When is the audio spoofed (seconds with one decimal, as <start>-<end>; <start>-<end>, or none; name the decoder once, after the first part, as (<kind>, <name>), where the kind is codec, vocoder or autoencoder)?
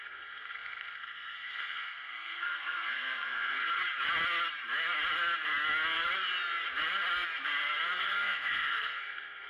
0.0-3.8 (codec, SNAC); 8.0-9.5